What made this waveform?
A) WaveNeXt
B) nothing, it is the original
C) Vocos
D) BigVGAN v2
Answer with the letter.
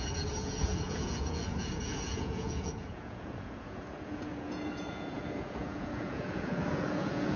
C